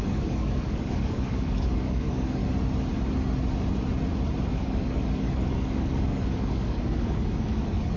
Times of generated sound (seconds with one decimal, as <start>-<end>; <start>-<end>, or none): 0.0-2.4; 4.5-8.0